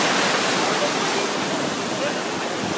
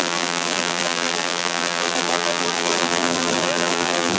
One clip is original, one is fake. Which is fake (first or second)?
second